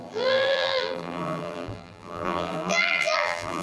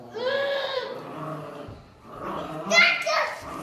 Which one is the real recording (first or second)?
second